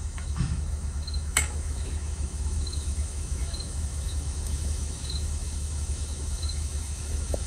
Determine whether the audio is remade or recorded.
remade